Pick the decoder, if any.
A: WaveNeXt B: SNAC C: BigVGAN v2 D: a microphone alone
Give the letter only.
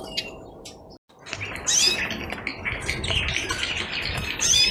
D